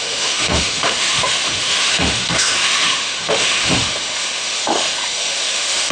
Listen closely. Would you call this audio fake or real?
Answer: fake